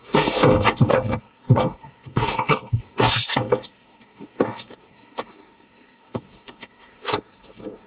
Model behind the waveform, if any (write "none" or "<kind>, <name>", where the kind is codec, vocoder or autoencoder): codec, SNAC